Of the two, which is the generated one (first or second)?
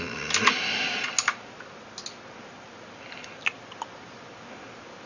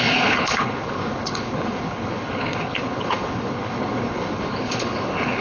second